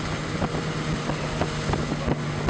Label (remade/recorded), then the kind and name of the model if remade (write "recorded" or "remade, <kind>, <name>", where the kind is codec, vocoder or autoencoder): recorded